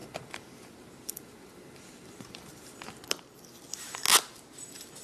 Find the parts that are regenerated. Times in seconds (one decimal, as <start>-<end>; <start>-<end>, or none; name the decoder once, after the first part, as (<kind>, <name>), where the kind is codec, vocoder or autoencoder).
0.0-3.0 (vocoder, BigVGAN v2)